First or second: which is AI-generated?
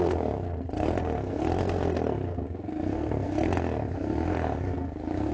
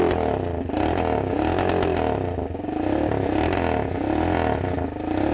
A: first